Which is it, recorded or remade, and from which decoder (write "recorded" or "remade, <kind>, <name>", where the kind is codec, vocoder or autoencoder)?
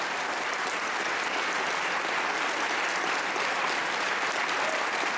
recorded